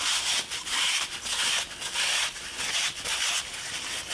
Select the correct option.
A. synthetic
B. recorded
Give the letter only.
B